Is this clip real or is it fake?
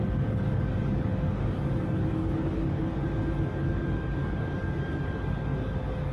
fake